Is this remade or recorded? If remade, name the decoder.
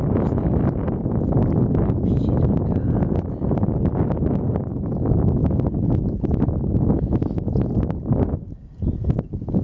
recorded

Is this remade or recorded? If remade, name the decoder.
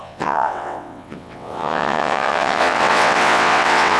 remade, vocoder, WaveNeXt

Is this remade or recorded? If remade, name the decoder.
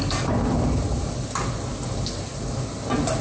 recorded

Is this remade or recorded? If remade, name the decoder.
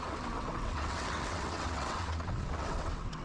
remade, vocoder, WaveNeXt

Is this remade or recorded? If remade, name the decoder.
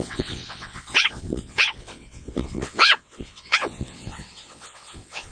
remade, vocoder, WaveNeXt